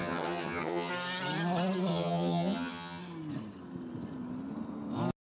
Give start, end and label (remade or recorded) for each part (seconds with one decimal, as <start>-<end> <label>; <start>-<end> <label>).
0.0-0.9 remade; 0.9-1.9 recorded; 1.9-3.0 remade; 3.0-5.2 recorded